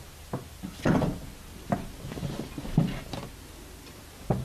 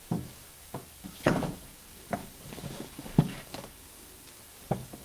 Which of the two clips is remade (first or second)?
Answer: second